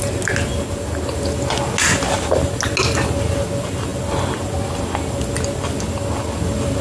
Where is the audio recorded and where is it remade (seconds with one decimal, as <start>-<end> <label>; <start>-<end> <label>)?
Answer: 0.0-6.8 recorded